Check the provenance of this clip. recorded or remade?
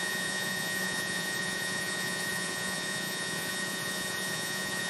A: remade